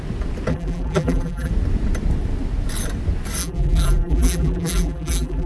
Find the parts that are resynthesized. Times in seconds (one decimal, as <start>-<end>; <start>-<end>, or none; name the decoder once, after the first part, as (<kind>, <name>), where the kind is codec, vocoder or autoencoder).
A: 0.5-1.5 (vocoder, BigVGAN v2); 3.4-5.5